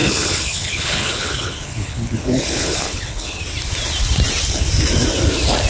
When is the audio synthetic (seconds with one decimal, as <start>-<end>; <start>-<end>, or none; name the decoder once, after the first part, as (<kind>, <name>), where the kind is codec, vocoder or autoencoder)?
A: 0.0-3.4 (codec, HILCodec)

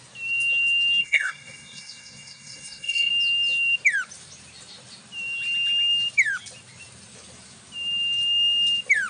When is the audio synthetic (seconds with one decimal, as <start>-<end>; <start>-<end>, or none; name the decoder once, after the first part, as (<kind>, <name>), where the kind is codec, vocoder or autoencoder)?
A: 1.0-3.1 (codec, SNAC)

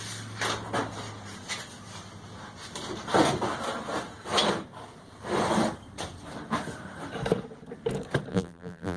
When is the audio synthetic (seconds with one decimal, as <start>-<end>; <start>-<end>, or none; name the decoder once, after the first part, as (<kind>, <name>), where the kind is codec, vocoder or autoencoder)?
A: 8.3-9.0 (vocoder, BigVGAN v2)

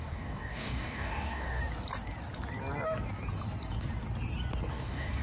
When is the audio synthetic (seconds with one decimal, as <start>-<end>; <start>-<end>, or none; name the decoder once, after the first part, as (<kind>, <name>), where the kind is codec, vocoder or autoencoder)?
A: 0.0-1.6 (codec, DAC); 4.7-5.2

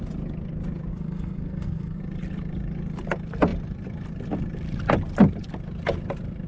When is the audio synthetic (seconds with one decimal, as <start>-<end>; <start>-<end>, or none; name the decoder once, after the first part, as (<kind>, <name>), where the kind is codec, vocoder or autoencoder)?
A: 0.9-2.0 (codec, SNAC)